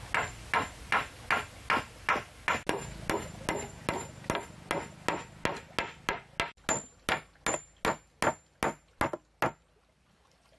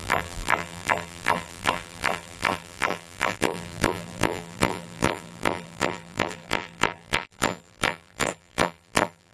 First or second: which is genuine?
first